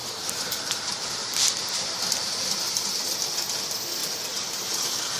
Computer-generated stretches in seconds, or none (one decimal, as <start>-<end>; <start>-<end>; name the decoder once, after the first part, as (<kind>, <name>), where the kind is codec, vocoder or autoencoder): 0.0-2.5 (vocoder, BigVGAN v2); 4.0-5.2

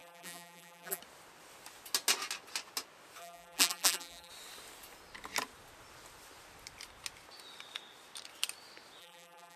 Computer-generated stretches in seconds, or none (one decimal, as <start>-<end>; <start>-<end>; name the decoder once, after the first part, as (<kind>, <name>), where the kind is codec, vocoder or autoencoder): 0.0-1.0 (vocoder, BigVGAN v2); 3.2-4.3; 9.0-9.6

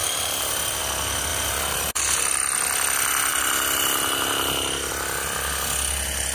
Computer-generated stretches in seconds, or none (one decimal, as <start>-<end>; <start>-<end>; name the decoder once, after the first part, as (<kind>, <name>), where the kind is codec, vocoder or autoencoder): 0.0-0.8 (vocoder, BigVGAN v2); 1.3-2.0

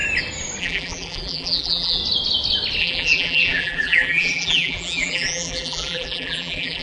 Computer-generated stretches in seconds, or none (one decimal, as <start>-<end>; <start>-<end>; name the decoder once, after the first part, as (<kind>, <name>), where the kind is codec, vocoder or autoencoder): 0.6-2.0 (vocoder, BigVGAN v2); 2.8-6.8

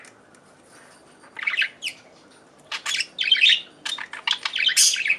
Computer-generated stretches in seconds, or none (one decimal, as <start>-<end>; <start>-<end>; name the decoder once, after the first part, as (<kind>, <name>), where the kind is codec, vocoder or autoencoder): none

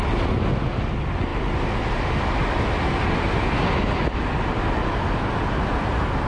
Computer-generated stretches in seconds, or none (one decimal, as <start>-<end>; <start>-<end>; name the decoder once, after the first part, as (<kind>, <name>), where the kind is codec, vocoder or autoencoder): none